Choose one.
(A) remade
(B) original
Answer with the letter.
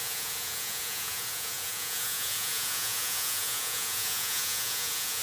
A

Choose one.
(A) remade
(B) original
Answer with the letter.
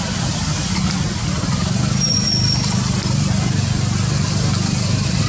B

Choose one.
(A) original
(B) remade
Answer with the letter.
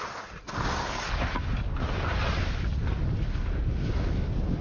A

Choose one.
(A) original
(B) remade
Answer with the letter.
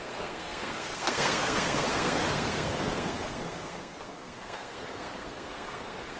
B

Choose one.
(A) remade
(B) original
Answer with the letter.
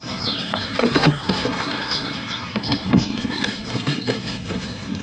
A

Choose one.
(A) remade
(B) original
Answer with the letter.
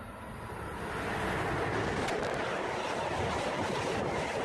B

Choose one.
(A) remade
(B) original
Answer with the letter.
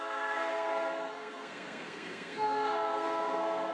A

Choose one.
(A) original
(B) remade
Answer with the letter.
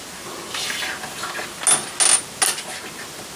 A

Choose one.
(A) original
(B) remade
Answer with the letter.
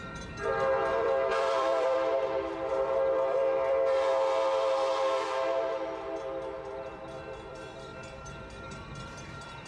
B